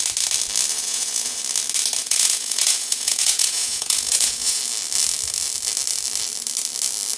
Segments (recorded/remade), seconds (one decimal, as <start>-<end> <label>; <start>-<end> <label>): 0.0-0.7 recorded; 0.7-1.4 remade; 1.4-2.0 recorded; 2.0-4.6 remade; 4.6-7.2 recorded